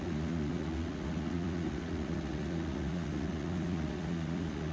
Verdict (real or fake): fake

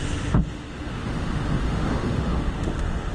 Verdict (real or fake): fake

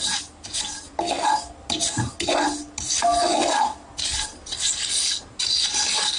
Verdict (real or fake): real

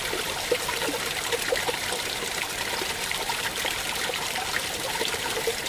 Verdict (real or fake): fake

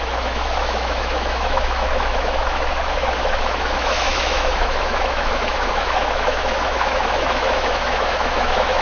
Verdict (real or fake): fake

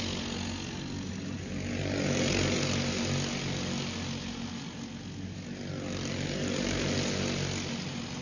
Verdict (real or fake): real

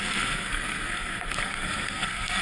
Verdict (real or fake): fake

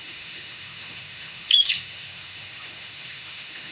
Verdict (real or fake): fake